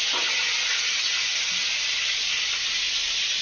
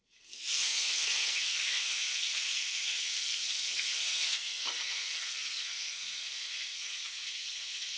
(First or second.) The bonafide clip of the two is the first